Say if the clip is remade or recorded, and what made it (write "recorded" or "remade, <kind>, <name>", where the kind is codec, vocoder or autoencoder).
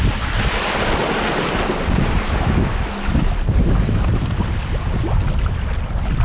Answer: recorded